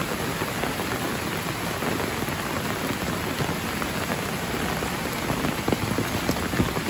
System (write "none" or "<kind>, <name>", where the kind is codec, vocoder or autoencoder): none